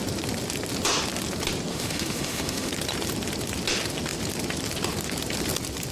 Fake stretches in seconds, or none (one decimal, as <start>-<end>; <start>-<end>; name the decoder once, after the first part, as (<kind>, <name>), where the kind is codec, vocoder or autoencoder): 1.7-2.7 (autoencoder, DAC-VAE)